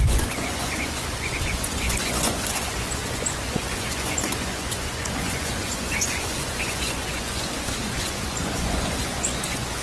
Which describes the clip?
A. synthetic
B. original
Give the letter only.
A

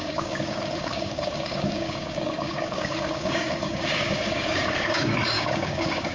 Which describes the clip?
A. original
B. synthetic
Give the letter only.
B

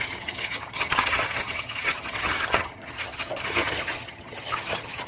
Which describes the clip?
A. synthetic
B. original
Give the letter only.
A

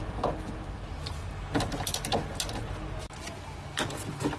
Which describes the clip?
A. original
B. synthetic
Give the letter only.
A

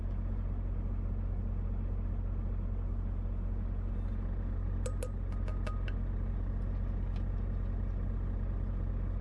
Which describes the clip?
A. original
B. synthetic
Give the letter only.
A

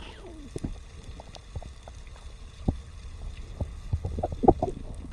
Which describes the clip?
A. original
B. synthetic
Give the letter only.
A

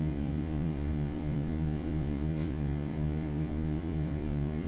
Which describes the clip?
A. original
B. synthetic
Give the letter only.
B